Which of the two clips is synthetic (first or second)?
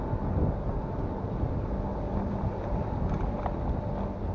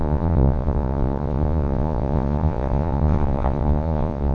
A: second